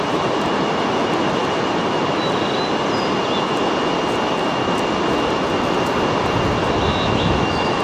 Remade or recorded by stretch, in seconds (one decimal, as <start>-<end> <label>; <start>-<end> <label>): 0.0-6.9 recorded; 6.9-7.8 remade